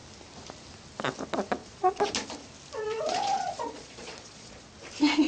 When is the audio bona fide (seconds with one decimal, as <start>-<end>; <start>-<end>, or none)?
0.0-1.6; 2.1-2.8; 4.7-5.3

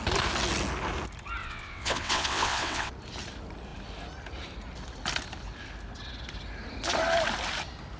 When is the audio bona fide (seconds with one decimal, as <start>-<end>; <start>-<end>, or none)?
0.0-1.4; 2.9-8.0

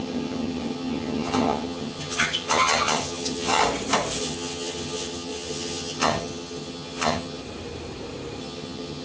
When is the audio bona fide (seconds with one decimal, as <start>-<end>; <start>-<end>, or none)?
3.6-4.2; 7.4-8.4

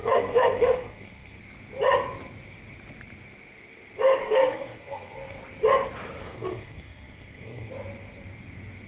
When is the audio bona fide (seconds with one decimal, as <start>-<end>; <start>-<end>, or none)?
1.4-4.2; 5.4-6.2; 7.7-8.9

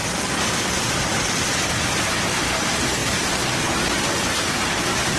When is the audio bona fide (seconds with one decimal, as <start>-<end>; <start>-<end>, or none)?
1.9-5.2

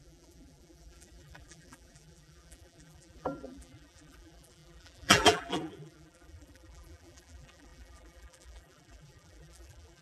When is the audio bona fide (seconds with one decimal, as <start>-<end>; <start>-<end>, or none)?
none

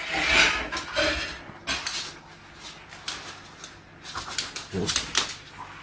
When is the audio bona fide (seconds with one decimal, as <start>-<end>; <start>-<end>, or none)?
0.0-5.8

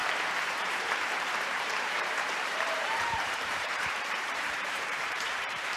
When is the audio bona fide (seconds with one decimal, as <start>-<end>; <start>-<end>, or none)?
none